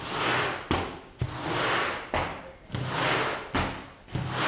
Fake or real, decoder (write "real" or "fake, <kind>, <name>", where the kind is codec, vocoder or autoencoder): real